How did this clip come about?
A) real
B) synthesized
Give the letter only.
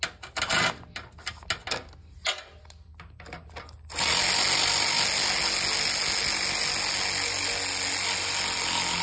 A